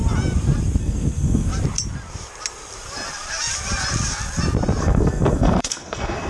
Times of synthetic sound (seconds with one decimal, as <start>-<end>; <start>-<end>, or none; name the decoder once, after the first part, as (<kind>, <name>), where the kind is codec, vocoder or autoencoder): 0.8-1.5 (codec, SNAC); 4.8-6.3